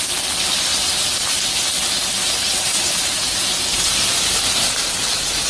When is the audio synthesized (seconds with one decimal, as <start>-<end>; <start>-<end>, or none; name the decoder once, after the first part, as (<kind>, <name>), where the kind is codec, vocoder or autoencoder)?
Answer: 0.7-1.2 (vocoder, BigVGAN v2); 2.5-5.5